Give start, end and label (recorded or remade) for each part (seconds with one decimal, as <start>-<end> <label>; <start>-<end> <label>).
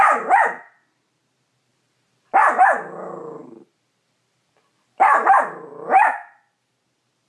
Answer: 0.0-1.7 recorded; 1.7-2.6 remade; 2.6-3.4 recorded; 3.4-6.4 remade; 6.4-7.3 recorded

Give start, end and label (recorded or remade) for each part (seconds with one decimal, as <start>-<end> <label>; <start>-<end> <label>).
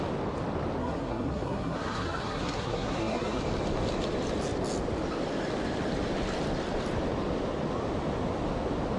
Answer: 0.0-0.8 recorded; 0.8-3.4 remade; 3.4-9.0 recorded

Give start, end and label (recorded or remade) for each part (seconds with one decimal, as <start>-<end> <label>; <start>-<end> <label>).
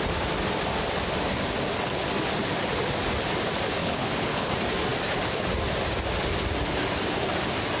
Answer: 0.0-3.8 recorded; 3.8-4.5 remade; 4.5-7.8 recorded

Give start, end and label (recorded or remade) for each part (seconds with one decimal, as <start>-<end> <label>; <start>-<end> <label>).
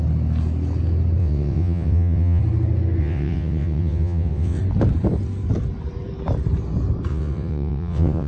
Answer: 0.0-1.2 recorded; 1.2-2.4 remade; 2.4-3.0 recorded; 3.0-4.6 remade; 4.6-7.1 recorded; 7.1-8.3 remade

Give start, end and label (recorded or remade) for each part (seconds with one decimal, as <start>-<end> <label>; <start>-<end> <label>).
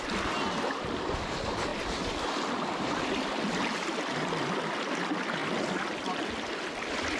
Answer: 0.0-7.2 recorded